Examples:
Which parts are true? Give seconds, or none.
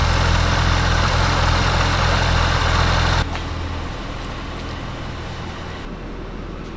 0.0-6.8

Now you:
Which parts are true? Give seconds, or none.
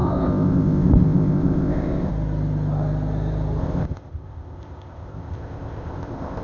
2.1-3.6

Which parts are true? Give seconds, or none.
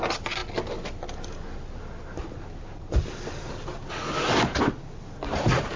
0.0-5.8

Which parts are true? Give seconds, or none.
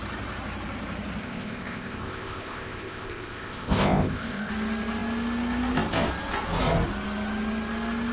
0.0-1.2; 4.5-8.1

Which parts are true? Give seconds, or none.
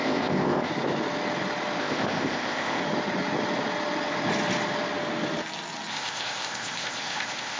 0.7-1.8; 2.8-5.9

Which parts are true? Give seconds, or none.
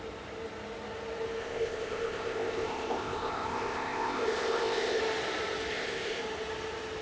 0.0-1.4; 5.0-5.7; 6.2-7.0